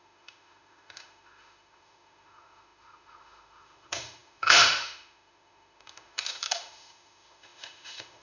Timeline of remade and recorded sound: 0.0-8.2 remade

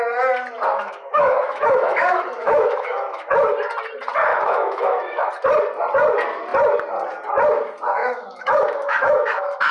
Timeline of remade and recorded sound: 0.0-0.7 recorded; 0.7-3.3 remade; 3.3-4.3 recorded; 4.3-5.3 remade; 5.3-8.0 recorded; 8.0-9.7 remade

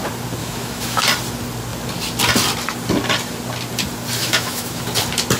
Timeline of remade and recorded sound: 0.0-0.4 recorded; 0.4-1.0 remade; 1.0-4.2 recorded; 4.2-4.8 remade; 4.8-5.4 recorded

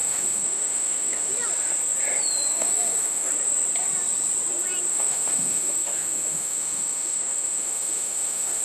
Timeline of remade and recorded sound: 0.0-1.3 remade; 1.3-2.5 recorded; 2.5-3.3 remade; 3.3-4.9 recorded; 4.9-8.6 remade

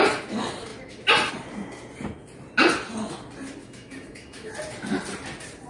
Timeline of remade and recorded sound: 0.0-3.6 recorded; 3.6-4.5 remade; 4.5-5.7 recorded

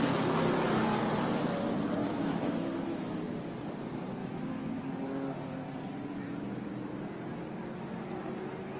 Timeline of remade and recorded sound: 0.0-2.0 recorded; 2.0-3.2 remade; 3.2-4.2 recorded; 4.2-4.7 remade; 4.7-8.8 recorded

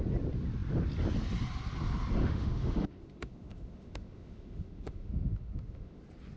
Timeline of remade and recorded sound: 0.0-2.2 recorded; 2.2-6.0 remade; 6.0-6.4 recorded